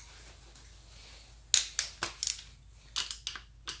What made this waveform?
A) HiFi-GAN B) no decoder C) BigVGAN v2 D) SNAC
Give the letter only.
B